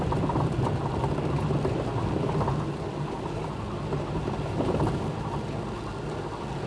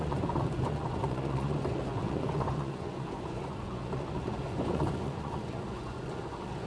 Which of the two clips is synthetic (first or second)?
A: second